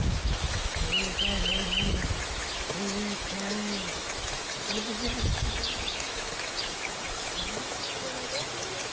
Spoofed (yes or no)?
yes